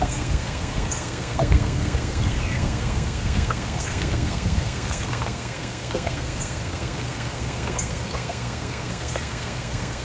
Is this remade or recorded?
remade